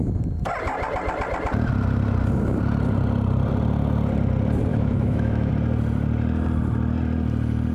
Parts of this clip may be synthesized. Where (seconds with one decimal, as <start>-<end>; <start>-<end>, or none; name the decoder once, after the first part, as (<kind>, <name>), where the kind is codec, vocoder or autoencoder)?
4.7-5.5 (autoencoder, DAC-VAE)